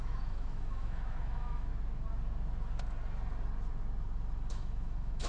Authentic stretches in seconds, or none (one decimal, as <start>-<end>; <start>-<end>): 1.7-4.5